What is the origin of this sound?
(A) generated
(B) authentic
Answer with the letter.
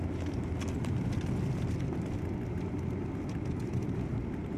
B